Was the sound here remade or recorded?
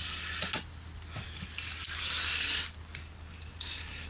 recorded